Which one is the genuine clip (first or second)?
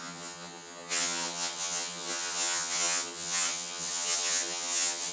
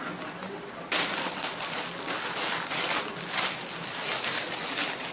second